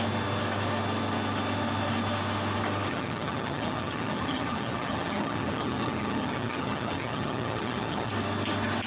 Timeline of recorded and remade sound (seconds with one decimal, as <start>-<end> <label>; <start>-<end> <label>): 0.0-2.9 recorded; 2.9-8.1 remade; 8.1-8.9 recorded